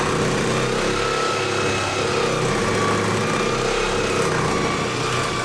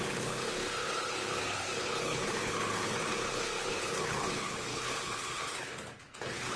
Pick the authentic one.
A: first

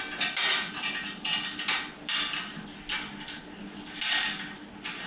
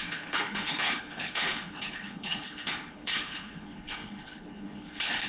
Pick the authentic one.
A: first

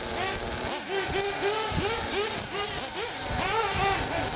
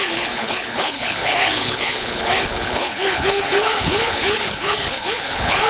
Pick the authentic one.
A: first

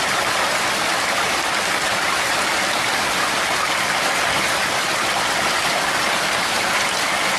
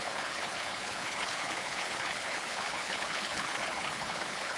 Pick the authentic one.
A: first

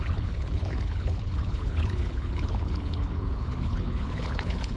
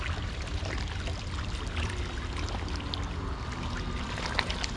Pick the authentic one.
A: second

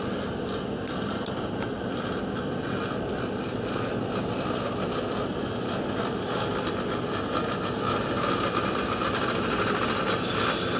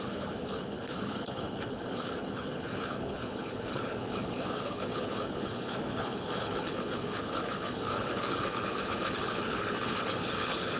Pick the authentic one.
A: first